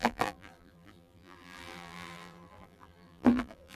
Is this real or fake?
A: fake